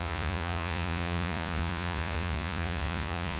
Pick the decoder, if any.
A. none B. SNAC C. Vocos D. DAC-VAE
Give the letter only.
C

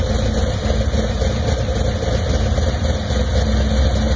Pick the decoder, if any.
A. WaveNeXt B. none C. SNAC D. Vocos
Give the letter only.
B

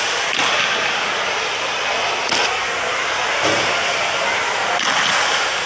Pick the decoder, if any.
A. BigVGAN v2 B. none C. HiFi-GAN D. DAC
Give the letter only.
B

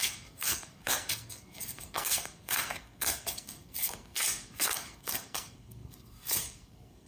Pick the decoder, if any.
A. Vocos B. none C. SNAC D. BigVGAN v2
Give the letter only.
C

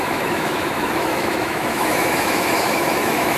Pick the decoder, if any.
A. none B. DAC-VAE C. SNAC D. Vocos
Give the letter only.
B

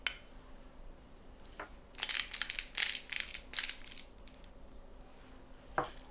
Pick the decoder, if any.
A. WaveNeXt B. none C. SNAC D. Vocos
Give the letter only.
B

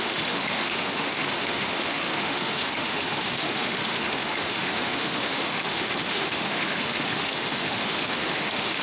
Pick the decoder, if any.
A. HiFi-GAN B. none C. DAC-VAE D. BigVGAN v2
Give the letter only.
C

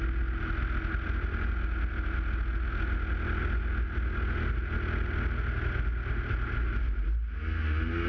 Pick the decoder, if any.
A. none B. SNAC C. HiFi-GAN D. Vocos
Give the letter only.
A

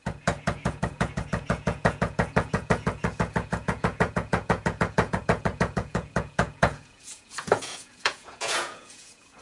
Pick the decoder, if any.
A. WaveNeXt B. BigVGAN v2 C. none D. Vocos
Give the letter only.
D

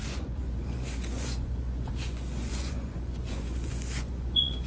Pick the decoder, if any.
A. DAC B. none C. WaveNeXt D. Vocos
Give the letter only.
D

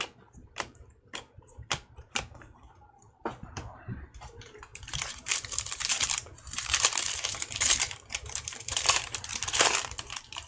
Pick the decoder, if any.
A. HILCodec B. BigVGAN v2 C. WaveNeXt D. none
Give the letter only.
B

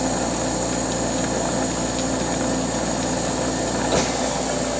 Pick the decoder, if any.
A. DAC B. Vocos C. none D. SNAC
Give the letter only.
C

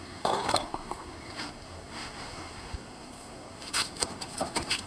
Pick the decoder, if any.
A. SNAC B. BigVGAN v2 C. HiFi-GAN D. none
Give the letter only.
A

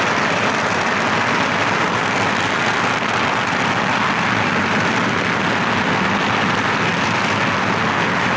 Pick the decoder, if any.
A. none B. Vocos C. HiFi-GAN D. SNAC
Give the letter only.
A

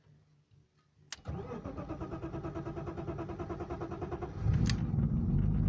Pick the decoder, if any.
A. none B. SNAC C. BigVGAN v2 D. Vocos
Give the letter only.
A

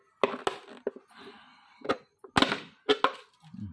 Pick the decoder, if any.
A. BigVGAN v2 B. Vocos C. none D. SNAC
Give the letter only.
C